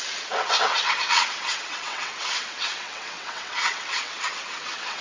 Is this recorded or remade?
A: remade